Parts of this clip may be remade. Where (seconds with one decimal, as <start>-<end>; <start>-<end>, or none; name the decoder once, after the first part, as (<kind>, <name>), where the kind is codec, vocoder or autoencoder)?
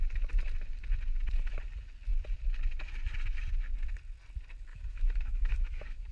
4.7-6.1 (autoencoder, DAC-VAE)